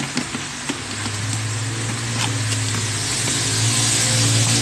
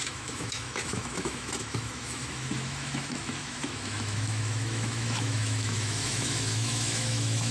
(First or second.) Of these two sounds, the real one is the first